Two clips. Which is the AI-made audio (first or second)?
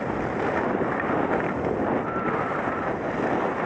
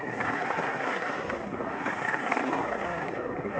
second